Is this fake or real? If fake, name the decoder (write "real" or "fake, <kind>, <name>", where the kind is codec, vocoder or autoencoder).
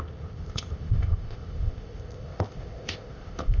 fake, codec, ZipCodec